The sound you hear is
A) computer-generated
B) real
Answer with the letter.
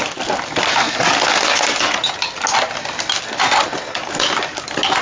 B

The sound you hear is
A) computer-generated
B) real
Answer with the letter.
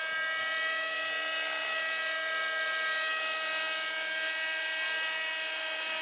B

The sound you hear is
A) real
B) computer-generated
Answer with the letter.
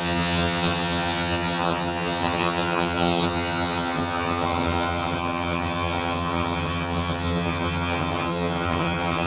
B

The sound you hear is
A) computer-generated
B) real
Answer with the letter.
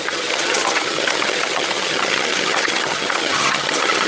A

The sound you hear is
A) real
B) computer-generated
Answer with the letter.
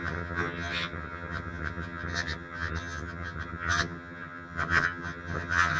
B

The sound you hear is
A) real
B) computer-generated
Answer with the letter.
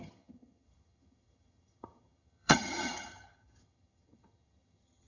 B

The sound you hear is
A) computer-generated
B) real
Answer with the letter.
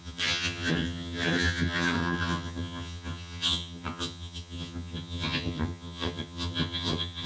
A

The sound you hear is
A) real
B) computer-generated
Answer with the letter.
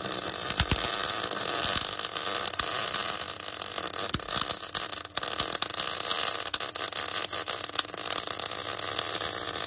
A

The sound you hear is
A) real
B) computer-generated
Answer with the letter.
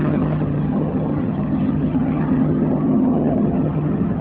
B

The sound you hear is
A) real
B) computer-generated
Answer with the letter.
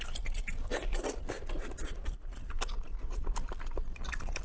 A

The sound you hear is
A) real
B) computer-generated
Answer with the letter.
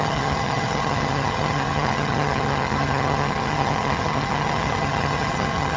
B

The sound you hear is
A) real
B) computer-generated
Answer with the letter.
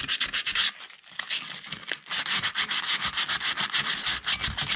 A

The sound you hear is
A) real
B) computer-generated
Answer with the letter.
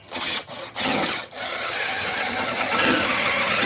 B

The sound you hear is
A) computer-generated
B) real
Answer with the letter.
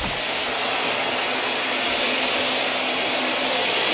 B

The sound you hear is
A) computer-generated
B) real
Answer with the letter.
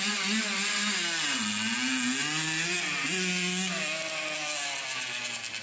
B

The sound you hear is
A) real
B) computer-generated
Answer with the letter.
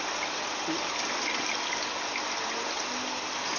A